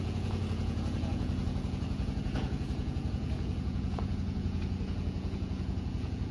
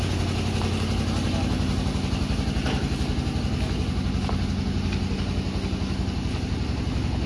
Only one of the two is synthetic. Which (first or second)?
first